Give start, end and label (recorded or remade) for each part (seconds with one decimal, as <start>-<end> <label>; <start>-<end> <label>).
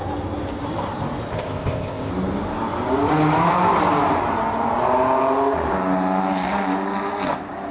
0.0-1.3 recorded; 1.3-2.1 remade; 2.1-7.7 recorded